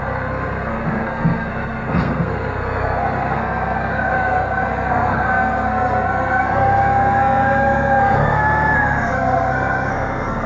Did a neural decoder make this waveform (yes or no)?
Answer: yes